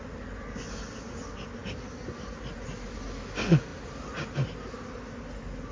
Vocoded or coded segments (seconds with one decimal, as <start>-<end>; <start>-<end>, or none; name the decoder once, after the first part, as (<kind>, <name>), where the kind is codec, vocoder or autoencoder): none